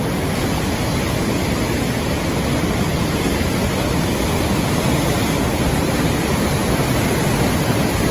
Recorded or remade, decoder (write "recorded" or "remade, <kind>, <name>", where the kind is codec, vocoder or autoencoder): recorded